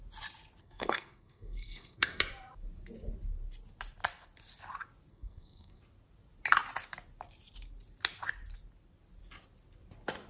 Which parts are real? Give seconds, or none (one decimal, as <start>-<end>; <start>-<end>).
0.0-0.6; 2.2-5.1; 5.8-10.3